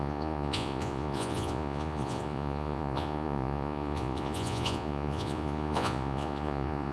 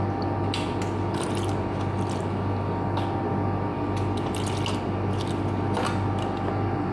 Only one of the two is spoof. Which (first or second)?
first